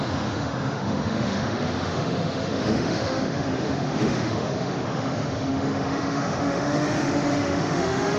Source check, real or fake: fake